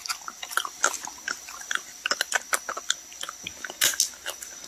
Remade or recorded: recorded